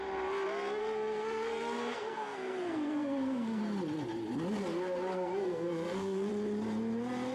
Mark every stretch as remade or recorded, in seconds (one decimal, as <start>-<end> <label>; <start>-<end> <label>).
0.0-0.8 recorded; 0.8-3.6 remade; 3.6-5.1 recorded; 5.1-6.3 remade; 6.3-7.3 recorded